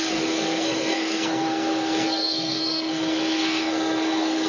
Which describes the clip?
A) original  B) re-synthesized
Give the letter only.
B